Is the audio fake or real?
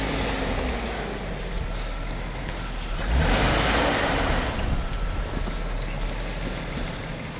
real